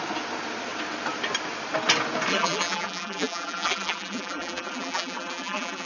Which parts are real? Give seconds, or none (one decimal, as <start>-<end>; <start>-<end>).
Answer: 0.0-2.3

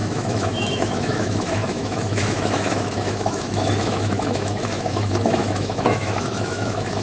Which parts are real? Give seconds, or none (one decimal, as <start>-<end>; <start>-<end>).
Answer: none

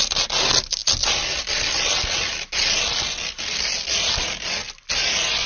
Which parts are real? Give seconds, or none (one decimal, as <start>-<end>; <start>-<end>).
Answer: 0.0-5.5